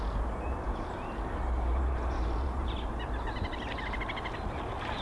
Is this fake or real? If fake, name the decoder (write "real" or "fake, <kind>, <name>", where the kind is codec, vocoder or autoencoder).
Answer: real